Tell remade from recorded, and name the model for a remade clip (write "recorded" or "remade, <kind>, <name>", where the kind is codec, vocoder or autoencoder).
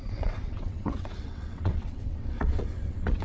remade, vocoder, WaveNeXt